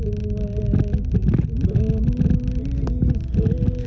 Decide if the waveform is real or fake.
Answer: real